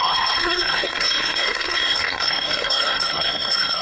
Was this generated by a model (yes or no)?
yes